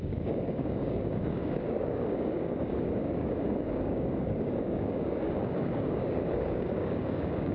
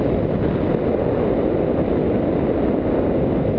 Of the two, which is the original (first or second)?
second